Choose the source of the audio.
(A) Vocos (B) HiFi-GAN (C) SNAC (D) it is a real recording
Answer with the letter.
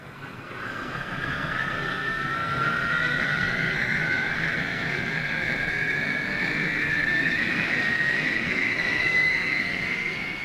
C